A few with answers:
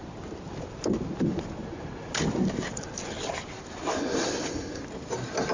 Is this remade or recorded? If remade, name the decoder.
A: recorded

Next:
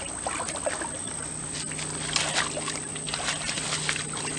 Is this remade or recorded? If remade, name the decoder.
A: recorded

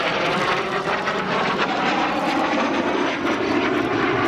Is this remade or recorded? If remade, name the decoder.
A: remade, vocoder, BigVGAN v2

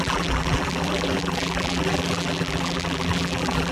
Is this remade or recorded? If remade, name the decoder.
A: remade, vocoder, BigVGAN v2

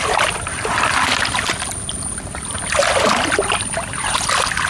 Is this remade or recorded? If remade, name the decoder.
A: remade, vocoder, BigVGAN v2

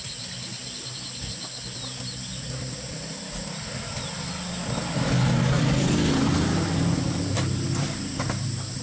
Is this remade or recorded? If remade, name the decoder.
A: recorded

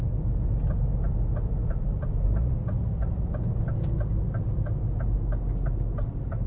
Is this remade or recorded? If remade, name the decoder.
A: recorded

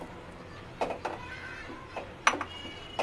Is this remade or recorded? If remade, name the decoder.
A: recorded